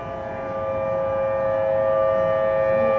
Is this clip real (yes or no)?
yes